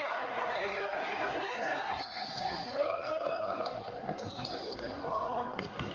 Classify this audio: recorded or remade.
remade